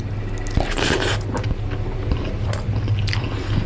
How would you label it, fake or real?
real